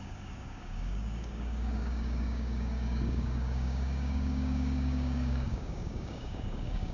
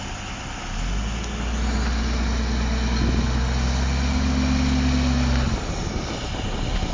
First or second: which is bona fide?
second